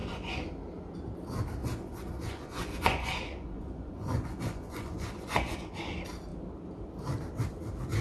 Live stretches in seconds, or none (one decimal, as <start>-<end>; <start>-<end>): 0.5-1.6; 5.7-8.0